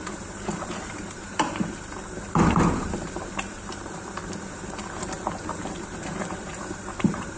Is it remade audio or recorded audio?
remade